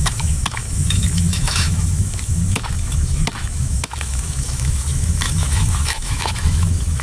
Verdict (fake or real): fake